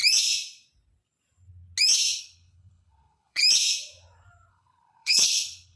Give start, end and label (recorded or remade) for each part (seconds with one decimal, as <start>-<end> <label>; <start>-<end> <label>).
0.0-2.2 recorded; 2.2-3.4 remade; 3.4-4.5 recorded; 4.5-5.8 remade